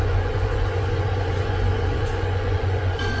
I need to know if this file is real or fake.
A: fake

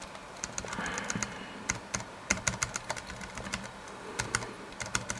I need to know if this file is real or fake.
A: real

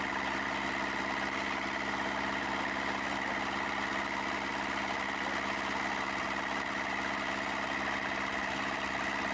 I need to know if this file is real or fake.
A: real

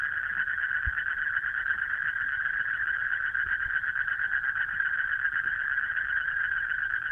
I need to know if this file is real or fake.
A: real